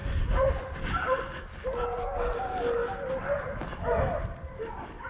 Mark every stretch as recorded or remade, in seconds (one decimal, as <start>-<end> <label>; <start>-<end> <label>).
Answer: 0.0-5.1 recorded